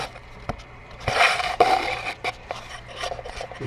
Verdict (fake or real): fake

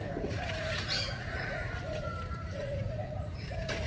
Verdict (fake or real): fake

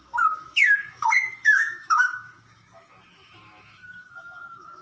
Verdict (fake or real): fake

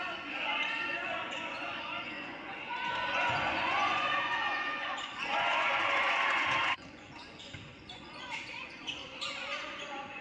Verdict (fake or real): fake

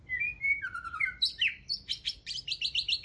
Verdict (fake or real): fake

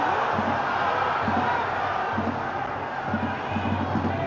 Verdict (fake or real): real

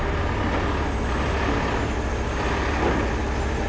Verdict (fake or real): real